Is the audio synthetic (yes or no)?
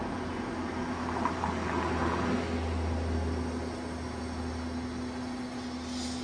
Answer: no